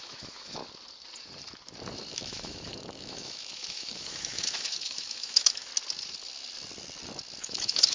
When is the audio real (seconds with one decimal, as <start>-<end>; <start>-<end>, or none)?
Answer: 0.6-2.1; 5.7-7.4